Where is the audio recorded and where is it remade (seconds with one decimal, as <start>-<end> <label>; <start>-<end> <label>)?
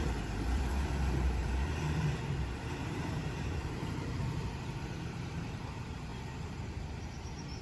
0.0-6.1 remade; 6.1-6.6 recorded; 6.6-7.6 remade